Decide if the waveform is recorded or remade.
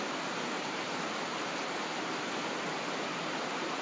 recorded